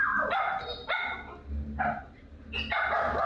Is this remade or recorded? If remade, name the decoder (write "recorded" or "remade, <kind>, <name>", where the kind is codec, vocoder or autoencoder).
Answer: recorded